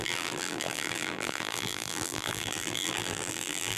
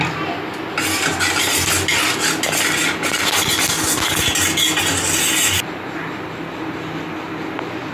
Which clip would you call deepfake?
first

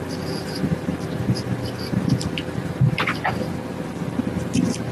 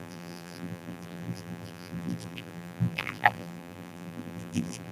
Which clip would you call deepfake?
second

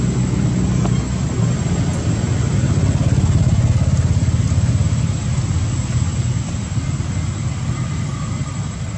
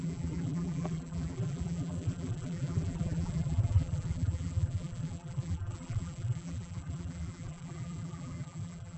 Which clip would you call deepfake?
second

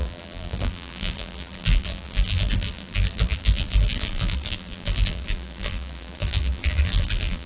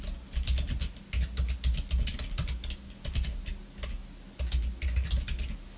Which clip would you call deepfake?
first